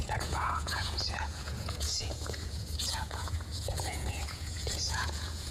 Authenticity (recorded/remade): remade